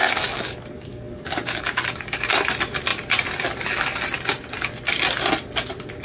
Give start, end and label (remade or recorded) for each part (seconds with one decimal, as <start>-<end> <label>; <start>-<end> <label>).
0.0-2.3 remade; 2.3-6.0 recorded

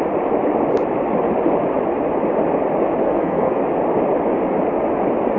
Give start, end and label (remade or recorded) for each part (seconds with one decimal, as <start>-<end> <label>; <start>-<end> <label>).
0.0-3.0 recorded; 3.0-3.6 remade; 3.6-5.4 recorded

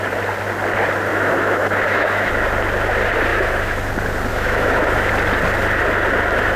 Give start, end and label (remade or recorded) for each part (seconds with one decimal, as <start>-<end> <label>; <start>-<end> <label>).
0.0-1.1 recorded; 1.1-2.3 remade; 2.3-3.3 recorded; 3.3-3.9 remade; 3.9-4.3 recorded; 4.3-5.1 remade; 5.1-6.6 recorded